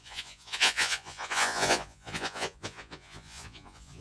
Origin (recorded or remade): remade